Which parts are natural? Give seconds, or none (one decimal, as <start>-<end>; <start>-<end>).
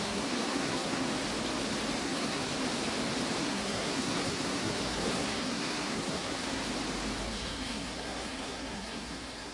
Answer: 1.1-2.0; 2.5-3.4; 6.6-7.2